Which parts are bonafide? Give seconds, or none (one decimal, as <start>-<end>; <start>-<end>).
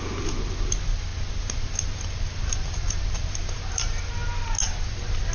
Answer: 0.0-1.1; 4.1-4.6